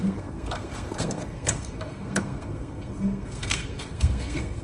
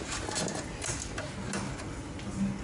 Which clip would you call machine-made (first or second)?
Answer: first